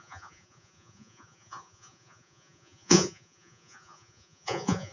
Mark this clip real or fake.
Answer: fake